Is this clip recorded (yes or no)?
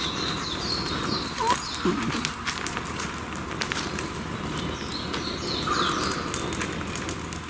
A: yes